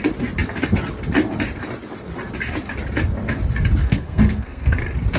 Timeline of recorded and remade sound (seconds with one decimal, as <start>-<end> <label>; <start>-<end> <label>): 0.0-3.8 recorded; 3.8-4.8 remade; 4.8-5.2 recorded

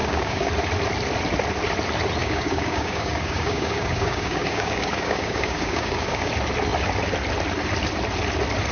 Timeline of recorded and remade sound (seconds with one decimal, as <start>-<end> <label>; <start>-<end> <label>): 0.0-0.5 remade; 0.5-2.2 recorded; 2.2-6.3 remade; 6.3-8.7 recorded